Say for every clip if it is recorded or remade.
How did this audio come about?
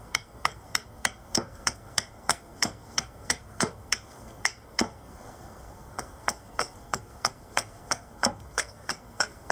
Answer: remade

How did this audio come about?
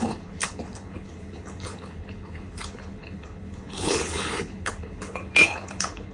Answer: remade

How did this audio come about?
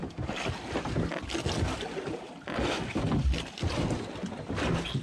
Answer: recorded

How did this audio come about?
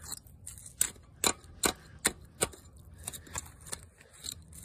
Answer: recorded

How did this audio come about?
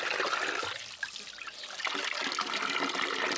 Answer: recorded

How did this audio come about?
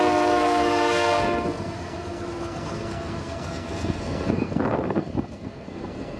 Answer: remade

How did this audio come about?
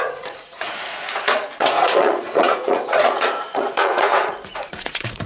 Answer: remade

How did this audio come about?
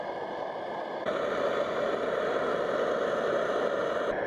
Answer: remade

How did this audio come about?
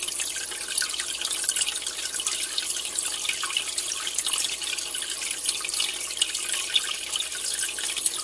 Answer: recorded